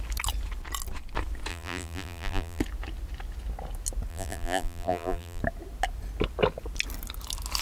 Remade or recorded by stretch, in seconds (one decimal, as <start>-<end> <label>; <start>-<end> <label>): 0.0-1.5 recorded; 1.5-2.6 remade; 2.6-4.1 recorded; 4.1-5.4 remade; 5.4-7.6 recorded

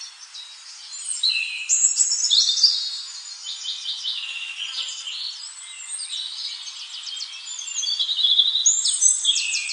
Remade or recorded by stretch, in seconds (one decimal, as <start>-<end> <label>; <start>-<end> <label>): 0.0-8.6 recorded; 8.6-9.7 remade